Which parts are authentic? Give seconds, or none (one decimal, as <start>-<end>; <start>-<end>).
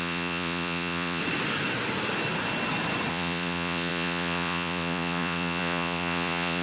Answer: 1.2-3.1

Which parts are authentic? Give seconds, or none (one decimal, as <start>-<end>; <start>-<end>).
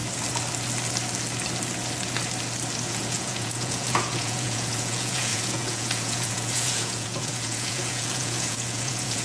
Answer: 0.0-2.9